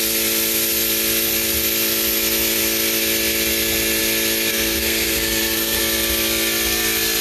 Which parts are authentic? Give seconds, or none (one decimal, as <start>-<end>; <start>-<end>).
0.0-4.5; 5.8-7.2